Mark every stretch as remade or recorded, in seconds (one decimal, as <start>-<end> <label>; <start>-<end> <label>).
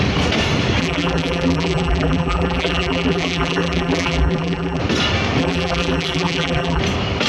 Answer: 0.0-0.8 recorded; 0.8-4.8 remade; 4.8-5.4 recorded; 5.4-6.8 remade; 6.8-7.3 recorded